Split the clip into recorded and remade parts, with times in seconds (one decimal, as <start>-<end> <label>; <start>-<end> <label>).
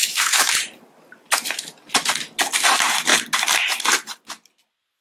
0.0-0.5 remade; 0.5-5.0 recorded